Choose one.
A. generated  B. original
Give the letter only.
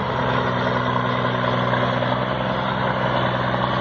B